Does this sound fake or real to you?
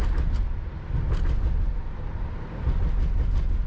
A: real